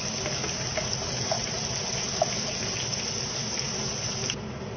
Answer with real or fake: real